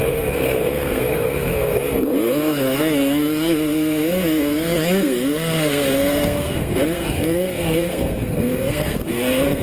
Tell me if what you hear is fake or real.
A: fake